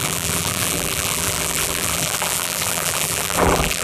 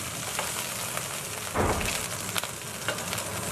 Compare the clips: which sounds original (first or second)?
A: second